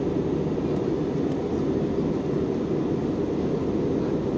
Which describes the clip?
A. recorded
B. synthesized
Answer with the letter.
A